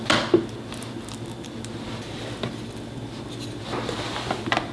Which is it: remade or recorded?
recorded